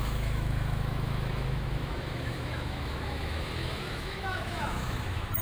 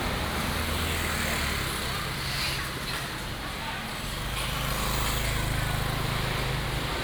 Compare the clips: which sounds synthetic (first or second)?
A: first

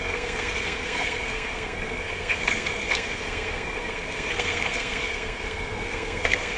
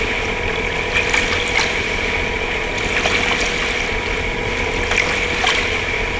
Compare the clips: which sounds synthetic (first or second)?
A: first